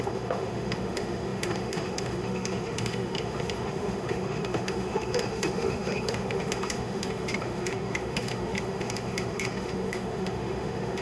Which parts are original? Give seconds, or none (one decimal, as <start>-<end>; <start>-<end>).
none